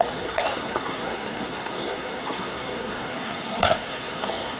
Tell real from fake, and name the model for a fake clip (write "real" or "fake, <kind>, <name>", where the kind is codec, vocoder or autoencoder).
fake, codec, SNAC